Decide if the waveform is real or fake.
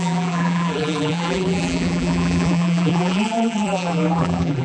fake